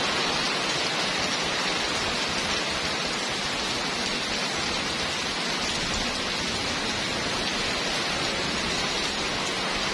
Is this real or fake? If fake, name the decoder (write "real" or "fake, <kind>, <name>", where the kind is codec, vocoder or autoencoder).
real